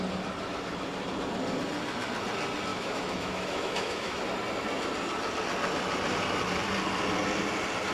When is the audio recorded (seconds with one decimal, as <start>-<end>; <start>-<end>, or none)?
0.0-2.7; 4.2-7.9